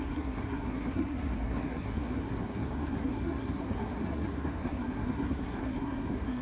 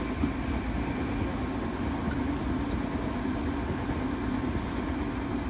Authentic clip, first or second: second